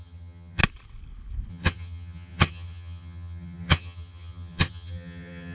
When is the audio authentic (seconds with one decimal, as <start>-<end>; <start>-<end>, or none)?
0.6-1.5